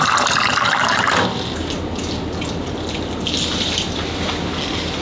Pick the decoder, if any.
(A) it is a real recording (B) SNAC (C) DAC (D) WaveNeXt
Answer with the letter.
A